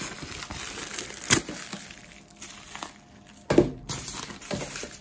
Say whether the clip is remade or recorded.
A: recorded